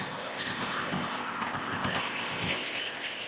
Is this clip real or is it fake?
fake